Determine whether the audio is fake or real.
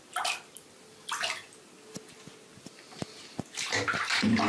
fake